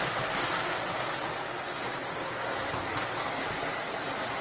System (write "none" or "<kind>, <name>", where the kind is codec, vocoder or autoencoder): none